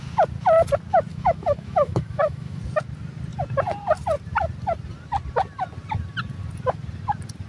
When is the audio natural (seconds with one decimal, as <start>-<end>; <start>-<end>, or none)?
0.0-1.1; 2.6-7.5

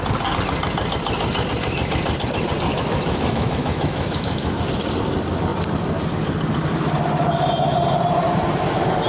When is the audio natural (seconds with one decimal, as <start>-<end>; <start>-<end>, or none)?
0.0-2.7; 4.6-9.1

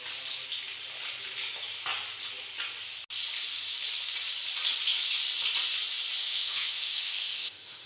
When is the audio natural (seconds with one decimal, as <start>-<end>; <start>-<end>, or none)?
0.0-6.2

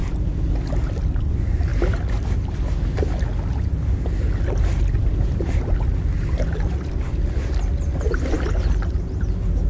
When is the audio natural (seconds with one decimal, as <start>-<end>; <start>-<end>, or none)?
0.0-9.7

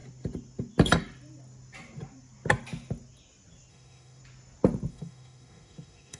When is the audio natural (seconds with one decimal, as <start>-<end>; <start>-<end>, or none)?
0.0-3.7; 4.2-4.9

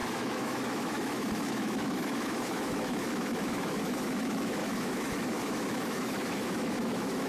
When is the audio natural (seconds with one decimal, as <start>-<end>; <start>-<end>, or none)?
none

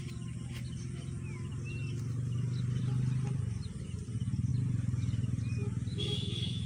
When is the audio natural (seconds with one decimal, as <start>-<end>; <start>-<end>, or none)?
0.0-5.9